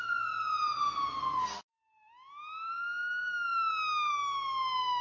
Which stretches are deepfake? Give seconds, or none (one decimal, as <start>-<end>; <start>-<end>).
none